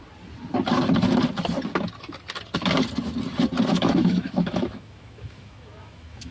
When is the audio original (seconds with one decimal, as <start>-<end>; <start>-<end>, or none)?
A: 0.0-3.7